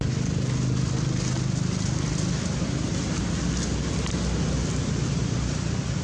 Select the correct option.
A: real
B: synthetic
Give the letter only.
A